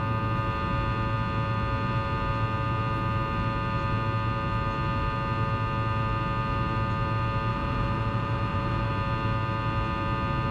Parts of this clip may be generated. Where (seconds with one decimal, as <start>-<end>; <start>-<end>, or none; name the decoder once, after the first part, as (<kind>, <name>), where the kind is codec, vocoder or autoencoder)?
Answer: 7.5-8.9 (vocoder, Vocos)